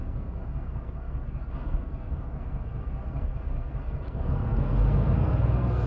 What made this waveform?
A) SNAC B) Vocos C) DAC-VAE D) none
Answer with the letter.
A